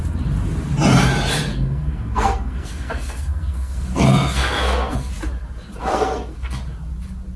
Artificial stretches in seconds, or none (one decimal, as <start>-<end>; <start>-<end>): 1.5-5.1; 5.8-6.6